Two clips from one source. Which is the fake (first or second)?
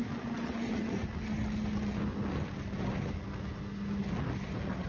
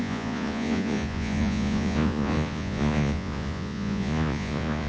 second